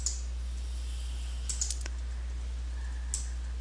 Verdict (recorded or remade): recorded